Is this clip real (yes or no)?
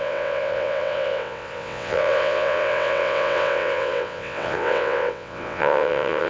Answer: no